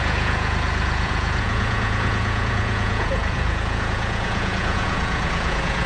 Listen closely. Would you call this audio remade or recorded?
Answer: remade